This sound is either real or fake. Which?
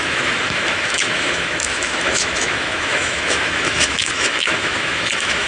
fake